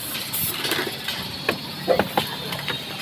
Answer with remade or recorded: recorded